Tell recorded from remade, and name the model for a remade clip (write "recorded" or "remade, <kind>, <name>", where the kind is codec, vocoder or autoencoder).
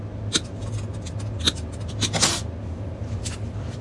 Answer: recorded